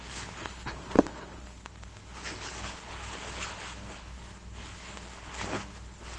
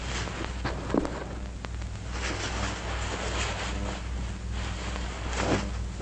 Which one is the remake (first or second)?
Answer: first